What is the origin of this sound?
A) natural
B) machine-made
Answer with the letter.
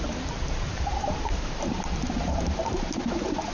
B